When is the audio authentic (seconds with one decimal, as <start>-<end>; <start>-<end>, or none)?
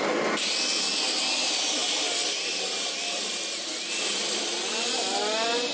0.0-5.7